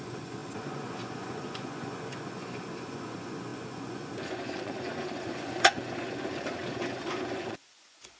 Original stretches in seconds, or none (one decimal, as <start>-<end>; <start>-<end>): none